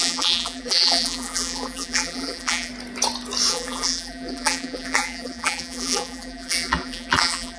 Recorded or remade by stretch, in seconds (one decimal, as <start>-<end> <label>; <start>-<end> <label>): 0.0-2.7 remade; 2.7-3.5 recorded; 3.5-7.6 remade